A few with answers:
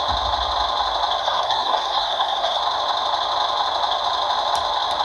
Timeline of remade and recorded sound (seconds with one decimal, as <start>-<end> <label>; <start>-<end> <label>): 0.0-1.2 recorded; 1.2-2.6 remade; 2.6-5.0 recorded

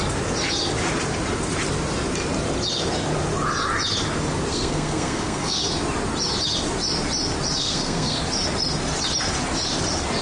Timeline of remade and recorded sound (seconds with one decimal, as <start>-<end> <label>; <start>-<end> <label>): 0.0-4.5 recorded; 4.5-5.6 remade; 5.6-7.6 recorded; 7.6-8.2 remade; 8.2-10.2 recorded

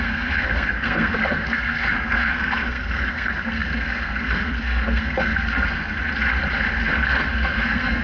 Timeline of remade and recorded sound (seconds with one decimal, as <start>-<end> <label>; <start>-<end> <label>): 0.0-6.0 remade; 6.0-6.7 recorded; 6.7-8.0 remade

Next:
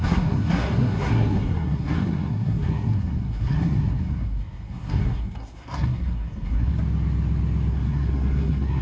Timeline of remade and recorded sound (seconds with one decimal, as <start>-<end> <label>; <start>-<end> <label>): 0.0-6.7 remade; 6.7-7.7 recorded; 7.7-8.8 remade

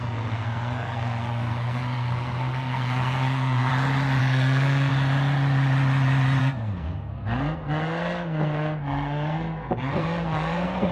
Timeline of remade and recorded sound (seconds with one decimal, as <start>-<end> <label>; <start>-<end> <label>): 0.0-3.7 remade; 3.7-4.2 recorded; 4.2-4.9 remade; 4.9-6.4 recorded; 6.4-10.9 remade

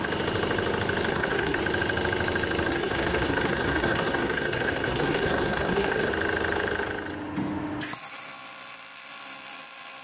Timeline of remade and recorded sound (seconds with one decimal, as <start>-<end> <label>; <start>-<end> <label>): 0.0-1.1 recorded; 1.1-1.6 remade; 1.6-2.7 recorded; 2.7-6.1 remade; 6.1-10.0 recorded